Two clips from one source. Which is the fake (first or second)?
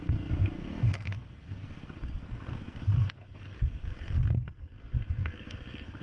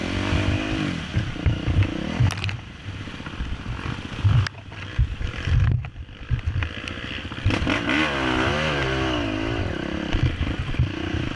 first